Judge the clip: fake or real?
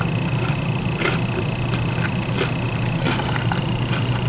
real